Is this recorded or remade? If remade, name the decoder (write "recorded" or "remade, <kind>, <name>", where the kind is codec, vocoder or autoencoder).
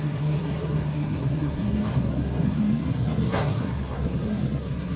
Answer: remade, codec, SNAC